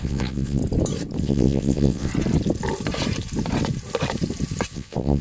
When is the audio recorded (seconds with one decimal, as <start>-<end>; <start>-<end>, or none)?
0.6-1.2; 2.1-4.7